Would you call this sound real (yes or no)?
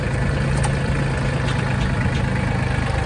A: yes